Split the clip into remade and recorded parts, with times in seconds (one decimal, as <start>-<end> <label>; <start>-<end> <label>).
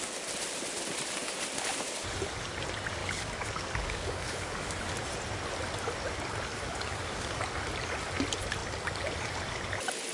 0.0-3.0 recorded; 3.0-4.7 remade; 4.7-6.5 recorded; 6.5-7.4 remade; 7.4-10.1 recorded